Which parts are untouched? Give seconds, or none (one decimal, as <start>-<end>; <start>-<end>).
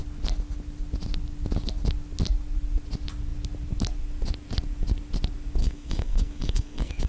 0.0-5.6